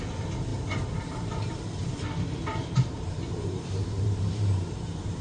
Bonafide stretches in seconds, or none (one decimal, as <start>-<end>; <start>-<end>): 0.0-0.5; 1.6-2.5